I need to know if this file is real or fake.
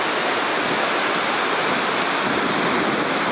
real